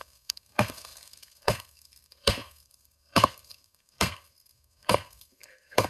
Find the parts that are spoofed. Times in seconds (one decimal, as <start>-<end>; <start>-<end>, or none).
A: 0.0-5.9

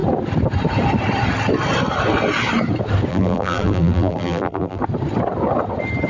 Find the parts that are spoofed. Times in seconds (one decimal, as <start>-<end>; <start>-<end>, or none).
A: 3.1-4.8

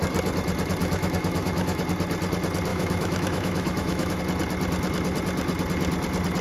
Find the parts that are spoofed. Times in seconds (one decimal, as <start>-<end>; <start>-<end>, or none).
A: 0.8-1.8; 2.7-4.2

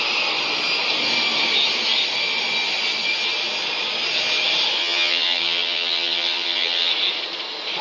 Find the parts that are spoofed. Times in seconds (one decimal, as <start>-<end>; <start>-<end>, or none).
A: 4.8-6.9

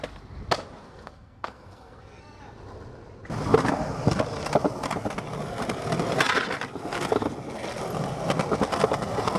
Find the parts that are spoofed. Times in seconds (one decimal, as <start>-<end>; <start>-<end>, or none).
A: 0.8-2.4